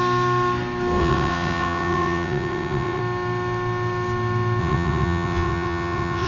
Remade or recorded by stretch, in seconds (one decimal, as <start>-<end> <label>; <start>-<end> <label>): 0.0-1.0 recorded; 1.0-3.0 remade; 3.0-4.6 recorded; 4.6-6.3 remade